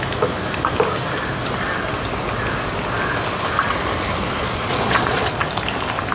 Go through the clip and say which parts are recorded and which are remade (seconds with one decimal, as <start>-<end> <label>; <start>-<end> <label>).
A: 0.0-4.4 recorded; 4.4-5.3 remade; 5.3-6.1 recorded